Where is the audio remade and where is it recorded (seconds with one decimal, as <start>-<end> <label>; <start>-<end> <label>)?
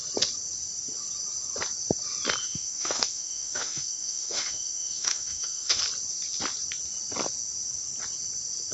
0.0-2.4 recorded; 2.4-5.8 remade; 5.8-8.7 recorded